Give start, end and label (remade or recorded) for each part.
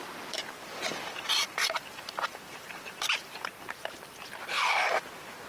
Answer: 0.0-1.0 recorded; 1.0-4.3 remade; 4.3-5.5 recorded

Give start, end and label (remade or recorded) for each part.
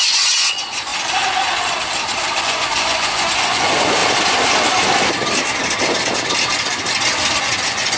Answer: 0.0-0.9 remade; 0.9-2.4 recorded; 2.4-4.0 remade; 4.0-7.4 recorded; 7.4-8.0 remade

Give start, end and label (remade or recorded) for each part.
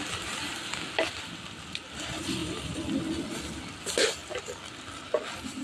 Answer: 0.0-5.6 recorded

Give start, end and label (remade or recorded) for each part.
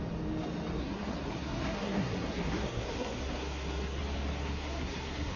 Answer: 0.0-0.8 recorded; 0.8-4.0 remade; 4.0-4.4 recorded; 4.4-5.4 remade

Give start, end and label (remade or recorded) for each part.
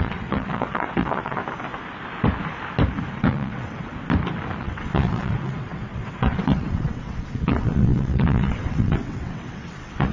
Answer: 0.0-1.4 remade; 1.4-3.1 recorded; 3.1-3.9 remade; 3.9-4.6 recorded; 4.6-10.1 remade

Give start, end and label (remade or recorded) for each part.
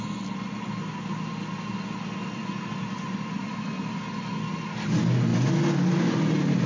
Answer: 0.0-6.7 recorded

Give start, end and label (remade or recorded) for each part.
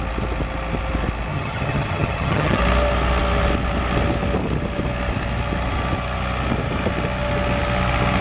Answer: 0.0-1.3 recorded; 1.3-2.6 remade; 2.6-8.2 recorded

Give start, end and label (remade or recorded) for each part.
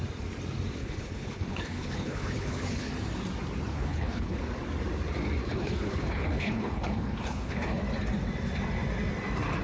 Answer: 0.0-0.8 recorded; 0.8-2.9 remade; 2.9-3.7 recorded; 3.7-4.4 remade; 4.4-5.4 recorded; 5.4-7.8 remade; 7.8-9.6 recorded